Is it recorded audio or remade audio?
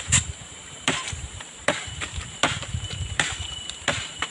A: remade